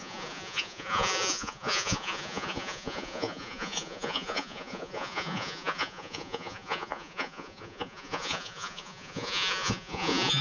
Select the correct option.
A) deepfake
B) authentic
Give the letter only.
A